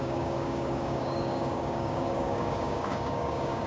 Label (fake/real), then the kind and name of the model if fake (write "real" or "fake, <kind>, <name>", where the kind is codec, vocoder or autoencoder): fake, codec, DAC